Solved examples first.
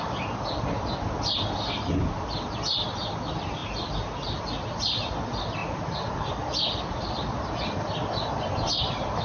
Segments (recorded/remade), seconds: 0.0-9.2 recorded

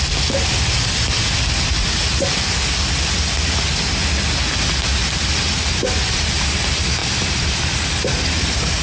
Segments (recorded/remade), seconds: 0.0-8.8 recorded

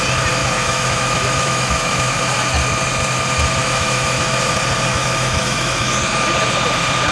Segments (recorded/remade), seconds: 0.0-0.4 recorded; 0.4-2.2 remade; 2.2-3.6 recorded; 3.6-4.4 remade; 4.4-4.9 recorded; 4.9-5.9 remade; 5.9-7.1 recorded

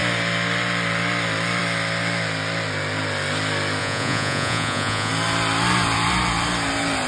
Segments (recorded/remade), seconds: 0.0-3.8 recorded; 3.8-5.1 remade; 5.1-7.1 recorded

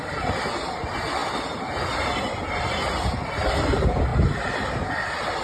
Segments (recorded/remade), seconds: 0.0-5.4 recorded

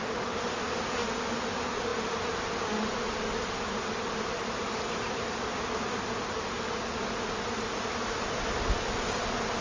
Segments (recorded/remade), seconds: 0.0-9.6 recorded

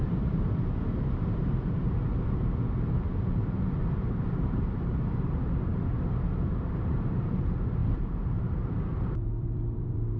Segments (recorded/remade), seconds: 0.0-5.7 remade; 5.7-6.4 recorded; 6.4-10.2 remade